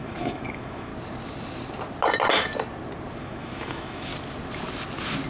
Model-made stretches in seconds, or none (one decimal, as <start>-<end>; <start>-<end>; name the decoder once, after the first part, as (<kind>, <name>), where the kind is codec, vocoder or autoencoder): 0.0-0.9 (autoencoder, DAC-VAE); 3.2-4.1